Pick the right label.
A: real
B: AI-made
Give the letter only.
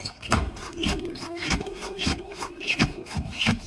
B